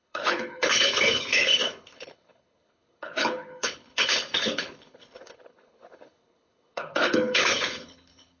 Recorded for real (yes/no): no